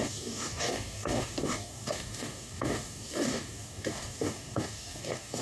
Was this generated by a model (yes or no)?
yes